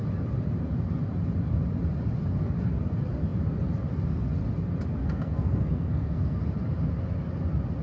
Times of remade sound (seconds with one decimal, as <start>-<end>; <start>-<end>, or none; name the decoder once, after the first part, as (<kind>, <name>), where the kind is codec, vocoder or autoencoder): 5.0-6.4 (codec, SNAC)

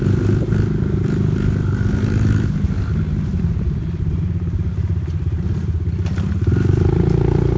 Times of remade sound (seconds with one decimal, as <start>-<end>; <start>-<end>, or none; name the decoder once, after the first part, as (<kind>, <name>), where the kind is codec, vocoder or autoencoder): none

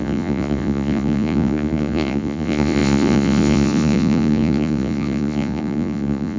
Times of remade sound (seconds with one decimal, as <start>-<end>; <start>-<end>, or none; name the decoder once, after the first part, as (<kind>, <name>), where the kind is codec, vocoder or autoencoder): 0.0-6.4 (vocoder, Vocos)

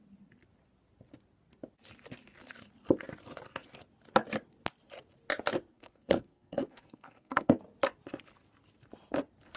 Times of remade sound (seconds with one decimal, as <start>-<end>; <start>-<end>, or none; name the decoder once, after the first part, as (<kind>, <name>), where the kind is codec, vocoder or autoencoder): 5.7-7.6 (codec, SNAC)

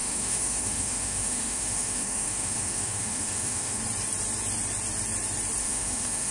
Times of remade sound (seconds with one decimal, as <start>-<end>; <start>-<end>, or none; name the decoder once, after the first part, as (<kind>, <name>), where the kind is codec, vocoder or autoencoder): 0.0-3.8 (autoencoder, DAC-VAE); 5.6-6.3

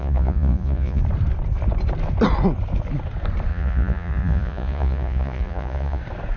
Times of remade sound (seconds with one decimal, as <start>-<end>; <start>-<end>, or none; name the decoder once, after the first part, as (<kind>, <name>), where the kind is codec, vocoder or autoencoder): 0.0-1.0 (vocoder, Vocos); 3.5-6.0

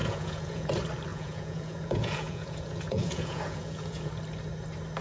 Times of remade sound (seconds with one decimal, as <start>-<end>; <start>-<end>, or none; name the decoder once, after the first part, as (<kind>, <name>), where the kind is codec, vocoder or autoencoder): 0.0-0.7 (vocoder, Vocos); 1.1-4.1